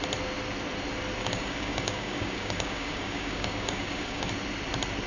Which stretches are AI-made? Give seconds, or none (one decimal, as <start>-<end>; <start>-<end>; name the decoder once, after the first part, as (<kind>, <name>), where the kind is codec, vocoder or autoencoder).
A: 1.2-4.3 (codec, DAC)